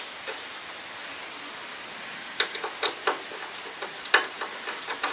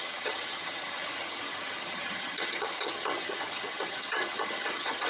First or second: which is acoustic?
first